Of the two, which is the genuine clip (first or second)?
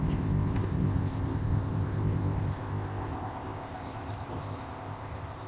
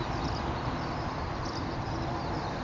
second